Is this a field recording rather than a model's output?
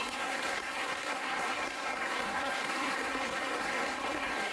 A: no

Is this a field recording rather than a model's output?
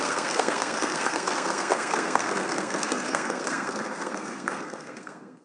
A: no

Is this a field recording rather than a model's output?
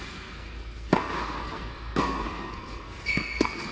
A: no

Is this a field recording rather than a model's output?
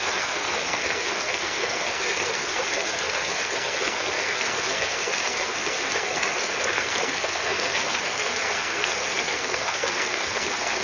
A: no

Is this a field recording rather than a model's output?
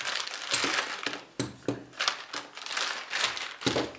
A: yes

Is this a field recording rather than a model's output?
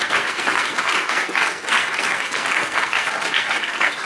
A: no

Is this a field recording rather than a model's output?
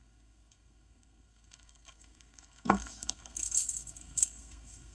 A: no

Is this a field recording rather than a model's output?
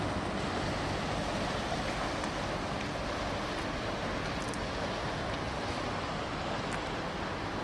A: yes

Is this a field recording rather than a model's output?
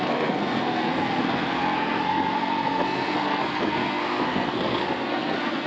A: no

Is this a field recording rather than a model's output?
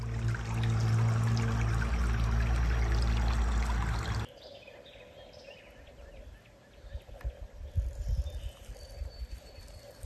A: yes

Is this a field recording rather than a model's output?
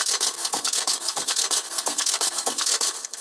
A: no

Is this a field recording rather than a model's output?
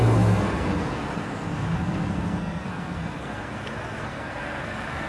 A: no